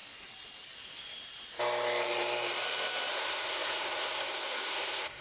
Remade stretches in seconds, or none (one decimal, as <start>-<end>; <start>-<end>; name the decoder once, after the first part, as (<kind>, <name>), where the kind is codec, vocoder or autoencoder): 3.1-5.2 (codec, SNAC)